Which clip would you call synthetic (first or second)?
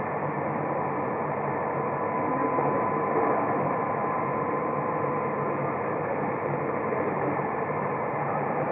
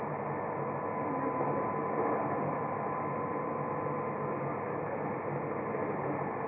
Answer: first